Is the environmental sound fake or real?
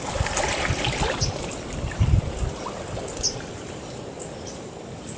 real